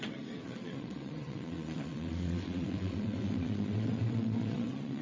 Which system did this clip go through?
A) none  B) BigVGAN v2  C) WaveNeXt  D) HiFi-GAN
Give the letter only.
C